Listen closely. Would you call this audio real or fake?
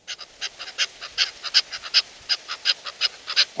real